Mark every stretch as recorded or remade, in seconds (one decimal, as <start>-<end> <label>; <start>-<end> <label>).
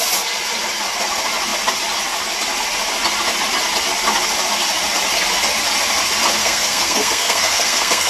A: 0.0-6.4 recorded; 6.4-8.1 remade